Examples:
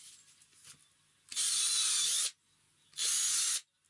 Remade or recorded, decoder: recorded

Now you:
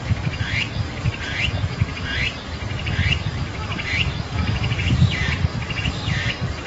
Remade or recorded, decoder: recorded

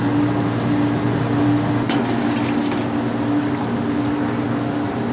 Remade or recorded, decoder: recorded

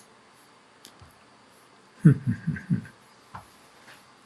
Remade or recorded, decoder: recorded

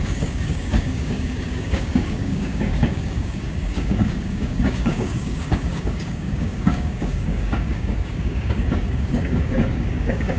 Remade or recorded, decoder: remade, codec, DAC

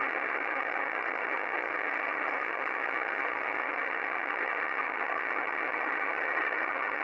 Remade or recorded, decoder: remade, vocoder, HiFi-GAN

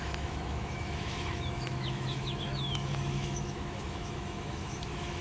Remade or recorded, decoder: remade, autoencoder, DAC-VAE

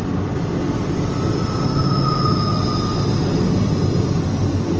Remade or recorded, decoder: recorded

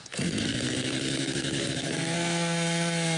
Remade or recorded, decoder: remade, codec, SNAC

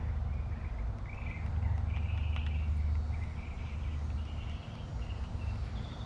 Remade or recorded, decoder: recorded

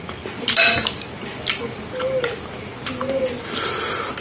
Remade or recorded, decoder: recorded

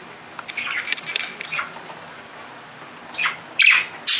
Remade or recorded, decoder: recorded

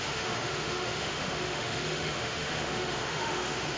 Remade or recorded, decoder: remade, autoencoder, DAC-VAE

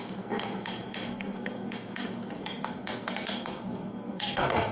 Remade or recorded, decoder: remade, codec, SNAC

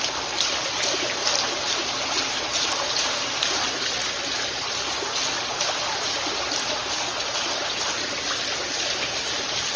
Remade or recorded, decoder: recorded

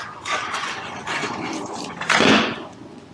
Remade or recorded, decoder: remade, vocoder, Vocos